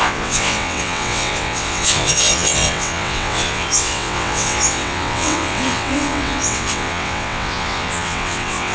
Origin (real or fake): fake